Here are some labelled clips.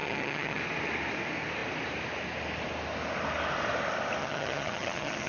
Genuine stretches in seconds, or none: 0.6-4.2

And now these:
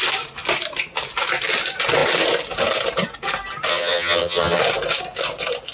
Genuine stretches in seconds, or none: 0.0-3.7; 4.6-5.7

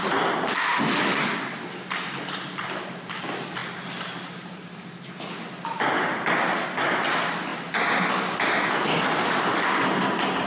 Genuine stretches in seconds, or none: 0.0-10.5

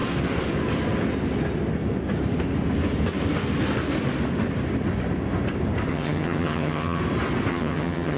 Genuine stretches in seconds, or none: 0.0-5.9; 7.0-7.5